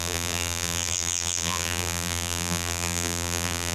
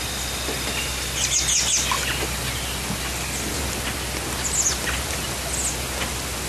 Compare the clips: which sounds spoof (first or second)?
first